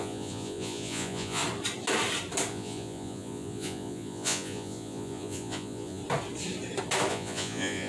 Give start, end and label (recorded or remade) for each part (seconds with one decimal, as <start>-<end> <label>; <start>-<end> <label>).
0.0-1.4 remade; 1.4-2.5 recorded; 2.5-6.0 remade; 6.0-7.1 recorded; 7.1-7.9 remade